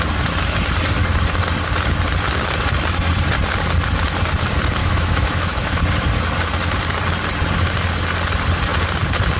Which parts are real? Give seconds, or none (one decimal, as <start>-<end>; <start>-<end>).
0.0-4.8; 5.8-9.4